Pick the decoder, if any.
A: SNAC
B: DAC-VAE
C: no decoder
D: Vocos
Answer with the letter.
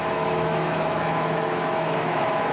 B